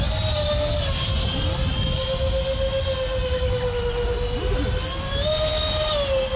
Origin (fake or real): real